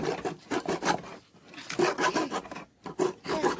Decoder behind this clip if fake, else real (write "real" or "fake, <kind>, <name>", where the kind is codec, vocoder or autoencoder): real